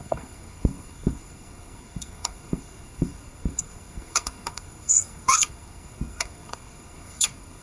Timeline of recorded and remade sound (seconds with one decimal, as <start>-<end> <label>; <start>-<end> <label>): 0.0-7.6 remade